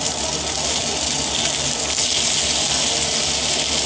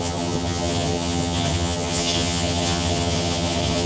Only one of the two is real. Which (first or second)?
first